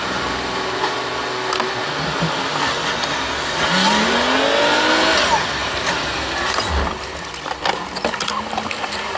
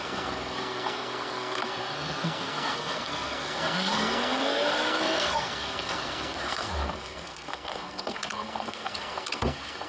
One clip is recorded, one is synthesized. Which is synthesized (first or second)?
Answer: second